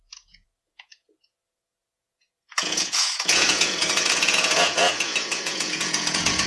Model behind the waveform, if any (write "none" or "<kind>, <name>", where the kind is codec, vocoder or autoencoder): vocoder, Vocos